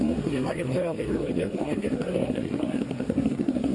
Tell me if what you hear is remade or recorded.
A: remade